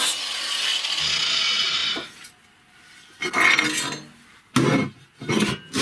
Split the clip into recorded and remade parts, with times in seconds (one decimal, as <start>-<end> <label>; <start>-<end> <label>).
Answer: 0.0-5.8 recorded